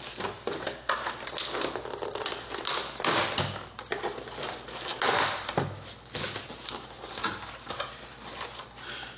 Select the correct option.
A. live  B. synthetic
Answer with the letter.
A